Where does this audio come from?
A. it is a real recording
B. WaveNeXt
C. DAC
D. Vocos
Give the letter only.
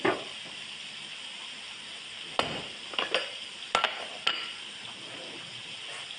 A